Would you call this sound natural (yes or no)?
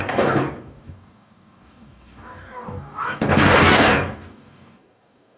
no